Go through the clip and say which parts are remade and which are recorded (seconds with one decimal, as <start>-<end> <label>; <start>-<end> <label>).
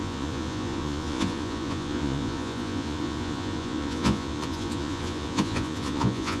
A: 0.0-6.4 remade